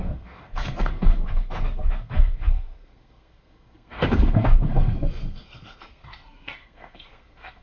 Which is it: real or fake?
fake